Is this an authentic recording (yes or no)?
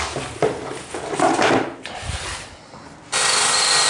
yes